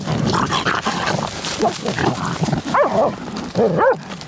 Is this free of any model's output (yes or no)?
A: yes